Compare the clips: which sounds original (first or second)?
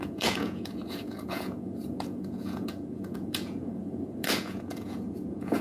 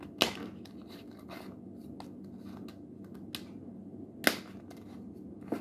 second